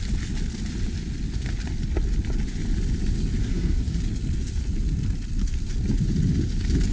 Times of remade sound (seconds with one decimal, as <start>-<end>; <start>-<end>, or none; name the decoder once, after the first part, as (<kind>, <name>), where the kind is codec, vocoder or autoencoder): 3.4-4.0 (codec, SNAC)